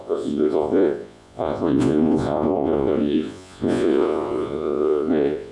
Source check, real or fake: fake